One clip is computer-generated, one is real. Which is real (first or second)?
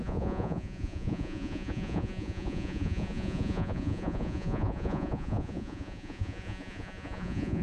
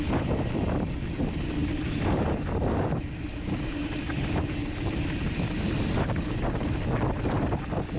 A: second